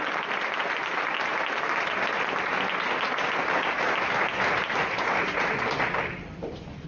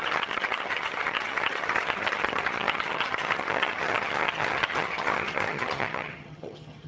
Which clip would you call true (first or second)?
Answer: first